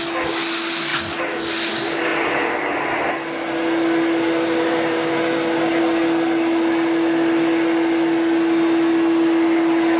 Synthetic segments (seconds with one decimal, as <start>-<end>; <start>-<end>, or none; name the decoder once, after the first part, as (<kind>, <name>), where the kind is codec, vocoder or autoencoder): none